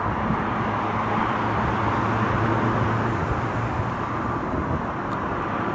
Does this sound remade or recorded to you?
recorded